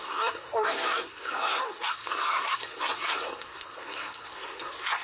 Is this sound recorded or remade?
remade